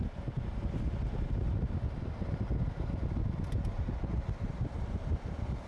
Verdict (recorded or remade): recorded